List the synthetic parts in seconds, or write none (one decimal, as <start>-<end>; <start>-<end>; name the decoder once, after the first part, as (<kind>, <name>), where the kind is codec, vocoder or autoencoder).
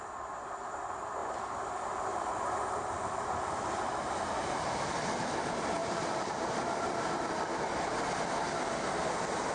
1.2-2.4 (vocoder, BigVGAN v2); 5.8-7.3